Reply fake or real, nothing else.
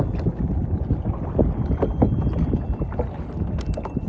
real